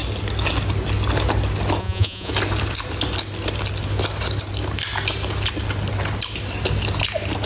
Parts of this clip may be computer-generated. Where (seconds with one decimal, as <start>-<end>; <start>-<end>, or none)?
1.8-2.3